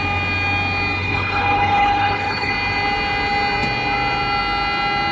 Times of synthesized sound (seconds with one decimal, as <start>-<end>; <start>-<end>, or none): 1.0-2.5